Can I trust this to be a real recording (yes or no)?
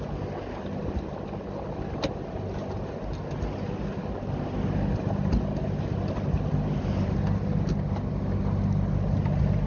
yes